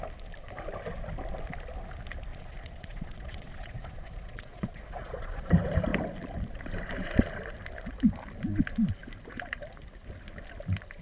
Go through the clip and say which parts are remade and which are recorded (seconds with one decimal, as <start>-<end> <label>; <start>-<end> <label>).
0.0-2.3 recorded; 2.3-5.5 remade; 5.5-11.0 recorded